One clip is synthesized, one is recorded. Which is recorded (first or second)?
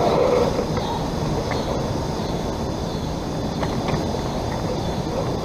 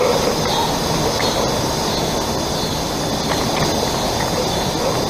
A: second